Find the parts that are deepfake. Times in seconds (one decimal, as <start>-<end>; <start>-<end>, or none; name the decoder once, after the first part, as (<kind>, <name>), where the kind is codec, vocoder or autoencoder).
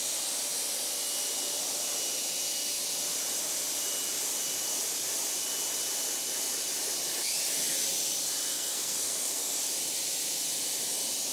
8.5-9.6 (codec, SNAC)